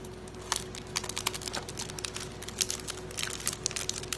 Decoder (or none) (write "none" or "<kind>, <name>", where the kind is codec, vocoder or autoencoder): none